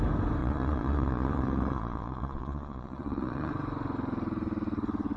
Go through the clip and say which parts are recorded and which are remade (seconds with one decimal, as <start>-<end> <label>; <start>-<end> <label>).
0.0-0.4 recorded; 0.4-3.5 remade; 3.5-5.2 recorded